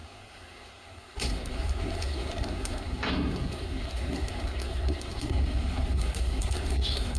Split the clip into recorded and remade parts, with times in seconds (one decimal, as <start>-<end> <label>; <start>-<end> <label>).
0.0-7.2 remade